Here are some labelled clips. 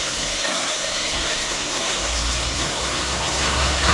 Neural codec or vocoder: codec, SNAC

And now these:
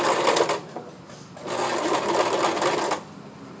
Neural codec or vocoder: none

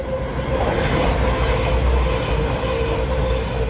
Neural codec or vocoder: none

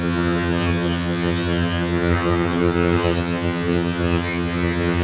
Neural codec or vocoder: vocoder, HiFi-GAN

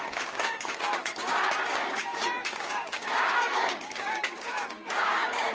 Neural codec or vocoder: codec, DAC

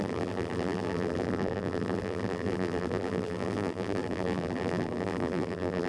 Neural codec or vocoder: vocoder, BigVGAN v2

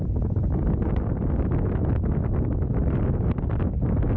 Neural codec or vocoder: none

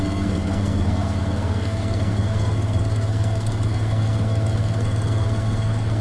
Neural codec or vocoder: codec, SNAC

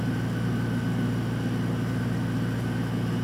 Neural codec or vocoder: none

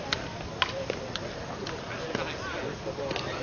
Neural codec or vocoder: none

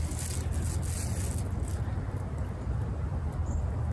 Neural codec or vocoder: none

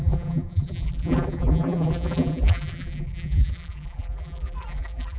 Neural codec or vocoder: vocoder, BigVGAN v2